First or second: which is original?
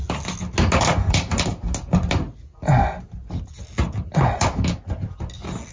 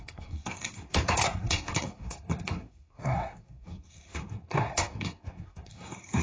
first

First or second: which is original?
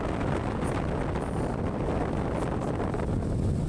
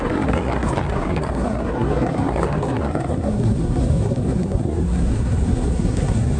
first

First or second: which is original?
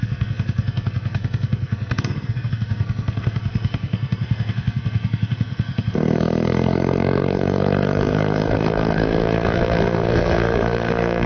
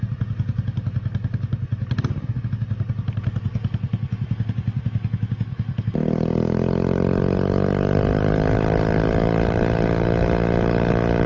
second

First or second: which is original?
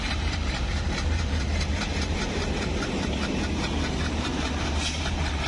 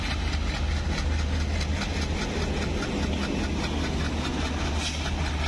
second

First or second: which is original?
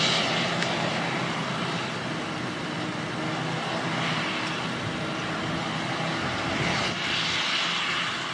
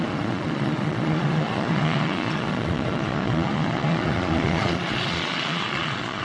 first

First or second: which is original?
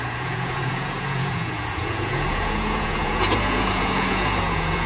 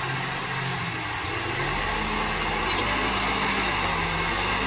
second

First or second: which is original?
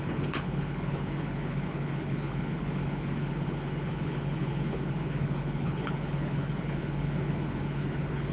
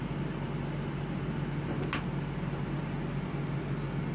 second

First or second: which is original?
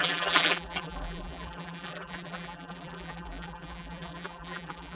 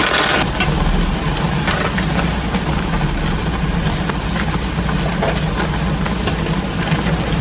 second